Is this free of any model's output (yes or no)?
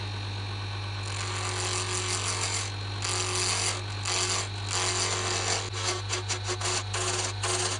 yes